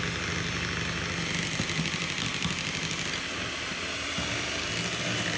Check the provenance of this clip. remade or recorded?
recorded